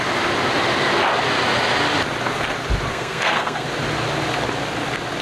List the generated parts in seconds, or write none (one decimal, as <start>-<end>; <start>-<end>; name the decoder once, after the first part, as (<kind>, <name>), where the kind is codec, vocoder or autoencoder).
2.9-3.7 (codec, SNAC)